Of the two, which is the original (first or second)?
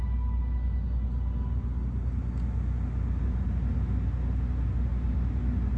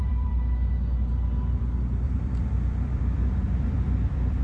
first